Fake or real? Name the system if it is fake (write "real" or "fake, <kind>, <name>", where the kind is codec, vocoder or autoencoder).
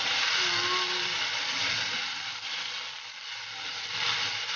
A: real